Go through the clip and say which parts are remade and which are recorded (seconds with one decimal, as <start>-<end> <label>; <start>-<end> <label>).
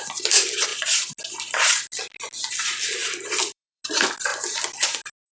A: 0.0-3.0 recorded; 3.0-3.8 remade; 3.8-5.3 recorded